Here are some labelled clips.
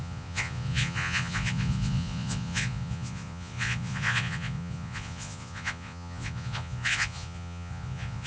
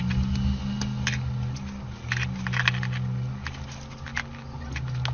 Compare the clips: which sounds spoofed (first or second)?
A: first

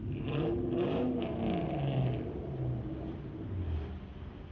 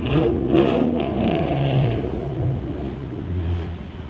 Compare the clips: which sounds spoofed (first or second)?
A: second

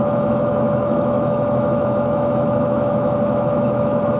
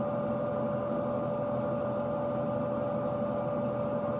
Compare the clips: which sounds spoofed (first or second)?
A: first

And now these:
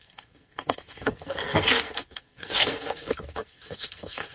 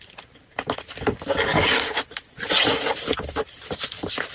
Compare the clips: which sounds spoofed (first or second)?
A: first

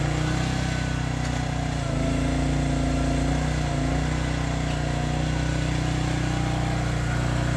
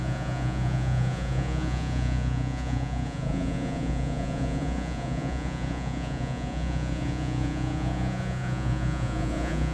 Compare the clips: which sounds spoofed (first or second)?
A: second